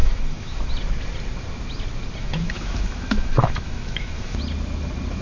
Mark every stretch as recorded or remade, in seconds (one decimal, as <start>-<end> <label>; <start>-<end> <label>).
0.0-0.7 remade; 0.7-2.2 recorded; 2.2-4.4 remade; 4.4-5.2 recorded